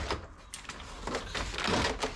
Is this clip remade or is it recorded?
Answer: recorded